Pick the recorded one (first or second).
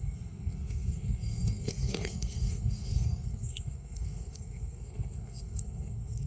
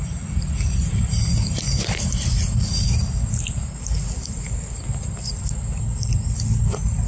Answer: second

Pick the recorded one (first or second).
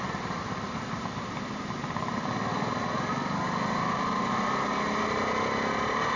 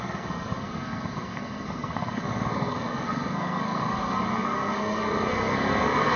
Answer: first